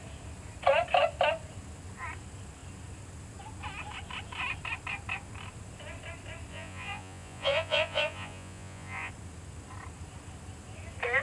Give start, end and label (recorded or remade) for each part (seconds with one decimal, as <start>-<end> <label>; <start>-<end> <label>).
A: 0.0-6.5 recorded; 6.5-9.1 remade; 9.1-11.2 recorded